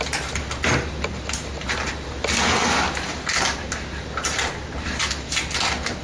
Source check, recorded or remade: recorded